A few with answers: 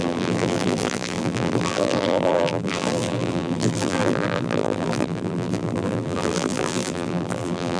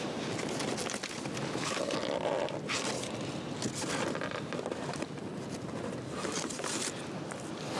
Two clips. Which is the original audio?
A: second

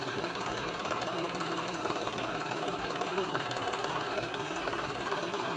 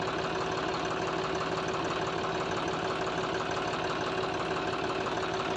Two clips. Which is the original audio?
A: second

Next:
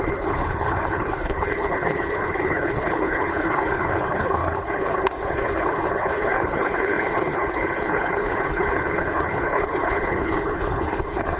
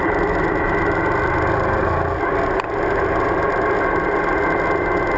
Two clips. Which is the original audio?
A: second